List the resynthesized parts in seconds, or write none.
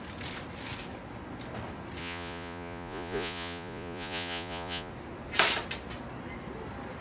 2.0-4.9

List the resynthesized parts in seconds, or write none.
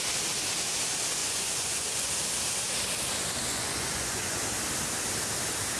1.2-2.1; 3.5-4.4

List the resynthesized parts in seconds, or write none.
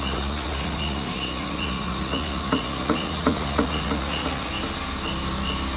0.0-4.5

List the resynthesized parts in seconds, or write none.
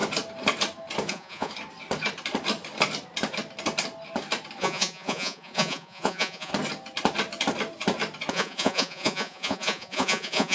1.1-1.5; 4.6-6.5; 8.3-10.5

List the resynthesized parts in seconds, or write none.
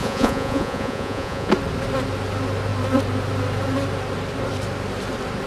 0.0-1.5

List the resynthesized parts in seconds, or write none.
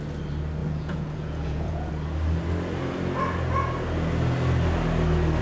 0.6-1.9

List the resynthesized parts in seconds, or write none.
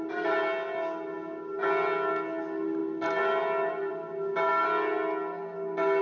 none